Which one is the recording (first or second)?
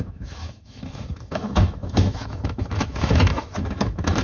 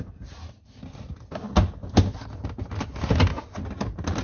second